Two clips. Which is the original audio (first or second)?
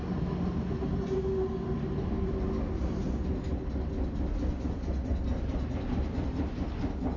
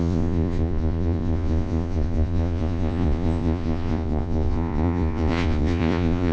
first